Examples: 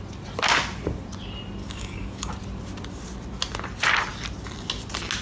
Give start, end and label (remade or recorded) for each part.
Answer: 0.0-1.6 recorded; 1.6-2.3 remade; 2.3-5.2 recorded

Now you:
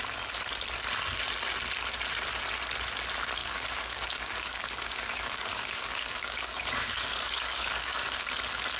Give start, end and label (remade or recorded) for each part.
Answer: 0.0-3.4 recorded; 3.4-8.4 remade; 8.4-8.8 recorded

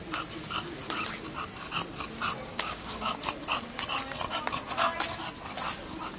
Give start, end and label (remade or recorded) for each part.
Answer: 0.0-2.5 recorded; 2.5-3.2 remade; 3.2-6.2 recorded

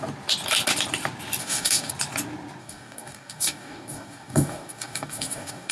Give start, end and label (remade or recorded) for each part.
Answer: 0.0-1.4 recorded; 1.4-1.9 remade; 1.9-2.6 recorded; 2.6-5.7 remade

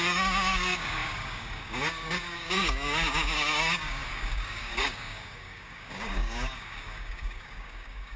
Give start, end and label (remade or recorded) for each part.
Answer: 0.0-8.2 remade

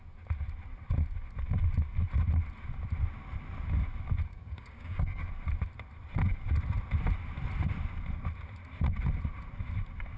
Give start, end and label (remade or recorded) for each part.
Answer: 0.0-4.3 recorded; 4.3-5.3 remade; 5.3-10.2 recorded

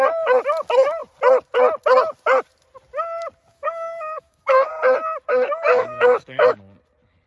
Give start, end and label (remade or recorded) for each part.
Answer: 0.0-3.5 recorded; 3.5-4.7 remade; 4.7-5.3 recorded; 5.3-6.6 remade; 6.6-7.3 recorded